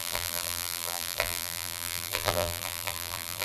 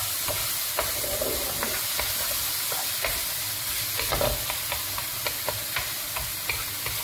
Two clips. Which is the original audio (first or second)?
second